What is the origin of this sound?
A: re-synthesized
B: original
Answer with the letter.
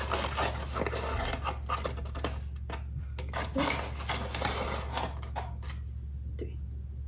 B